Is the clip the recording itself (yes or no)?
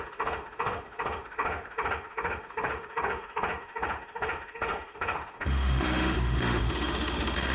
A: no